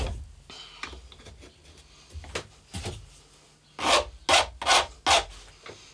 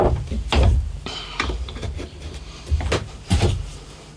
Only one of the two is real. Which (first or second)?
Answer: first